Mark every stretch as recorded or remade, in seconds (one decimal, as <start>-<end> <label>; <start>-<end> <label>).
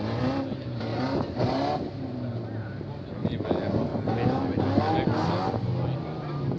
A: 0.0-6.6 recorded